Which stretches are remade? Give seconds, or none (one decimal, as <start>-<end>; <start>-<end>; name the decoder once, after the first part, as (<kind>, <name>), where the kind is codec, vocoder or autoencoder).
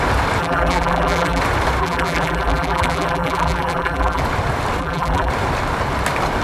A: 0.4-1.4 (vocoder, BigVGAN v2); 1.8-4.2; 4.8-5.3